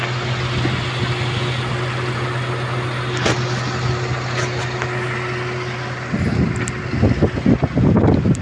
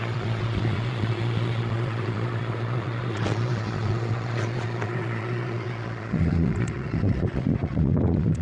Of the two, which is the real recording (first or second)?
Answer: first